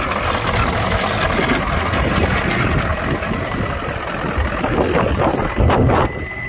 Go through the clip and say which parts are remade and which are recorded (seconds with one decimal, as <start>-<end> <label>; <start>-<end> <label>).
0.0-6.5 recorded

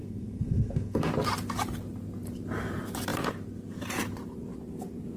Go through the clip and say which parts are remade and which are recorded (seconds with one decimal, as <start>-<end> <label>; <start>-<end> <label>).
0.0-1.1 remade; 1.1-5.2 recorded

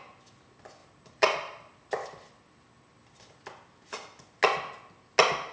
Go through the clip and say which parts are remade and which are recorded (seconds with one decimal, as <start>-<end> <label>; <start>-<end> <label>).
0.0-0.8 recorded; 0.8-3.4 remade; 3.4-5.5 recorded

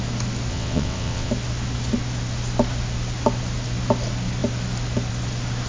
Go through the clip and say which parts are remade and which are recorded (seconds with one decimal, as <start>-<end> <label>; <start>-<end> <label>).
0.0-0.5 recorded; 0.5-1.3 remade; 1.3-5.7 recorded